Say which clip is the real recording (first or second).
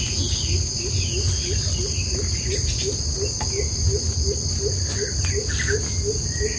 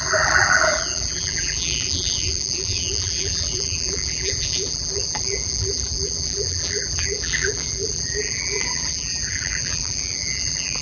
first